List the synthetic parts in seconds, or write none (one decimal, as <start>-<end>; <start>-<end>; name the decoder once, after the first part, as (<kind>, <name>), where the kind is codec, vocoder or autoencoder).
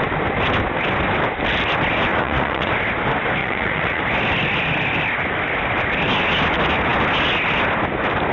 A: 2.1-2.7 (vocoder, Vocos); 3.4-4.0